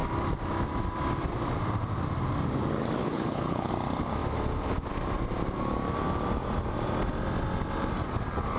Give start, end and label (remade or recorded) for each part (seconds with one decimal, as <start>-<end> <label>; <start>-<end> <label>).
0.0-3.0 recorded; 3.0-3.7 remade; 3.7-8.6 recorded